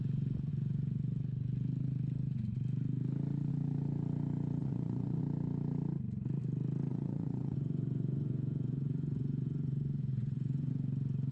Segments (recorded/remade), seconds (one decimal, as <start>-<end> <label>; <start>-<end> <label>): 0.0-4.6 recorded; 4.6-5.2 remade; 5.2-6.9 recorded; 6.9-10.7 remade; 10.7-11.3 recorded